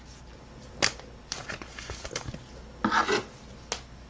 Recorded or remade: recorded